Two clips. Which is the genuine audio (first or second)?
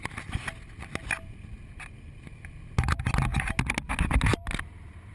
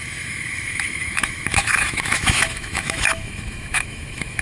first